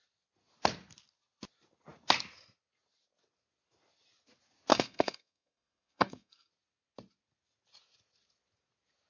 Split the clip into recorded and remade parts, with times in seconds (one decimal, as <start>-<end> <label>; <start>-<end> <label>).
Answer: 0.0-4.7 recorded; 4.7-6.5 remade; 6.5-9.1 recorded